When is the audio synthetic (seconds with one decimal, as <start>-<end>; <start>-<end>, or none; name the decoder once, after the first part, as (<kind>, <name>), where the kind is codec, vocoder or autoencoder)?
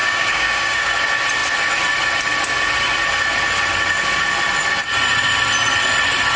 0.0-0.9 (codec, DAC)